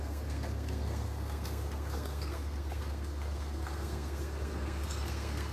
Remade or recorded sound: remade